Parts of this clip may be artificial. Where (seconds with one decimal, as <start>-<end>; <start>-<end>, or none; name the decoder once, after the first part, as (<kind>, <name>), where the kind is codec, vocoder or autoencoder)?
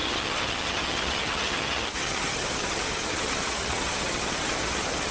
0.0-5.1 (vocoder, HiFi-GAN)